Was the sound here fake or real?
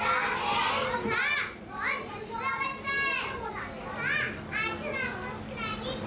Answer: real